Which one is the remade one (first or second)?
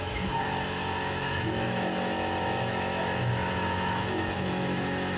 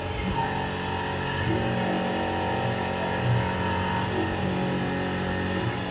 first